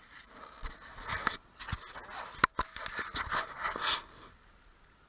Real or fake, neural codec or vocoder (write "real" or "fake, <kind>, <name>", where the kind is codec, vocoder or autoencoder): real